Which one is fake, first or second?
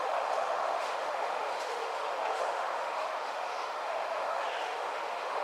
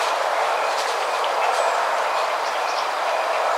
first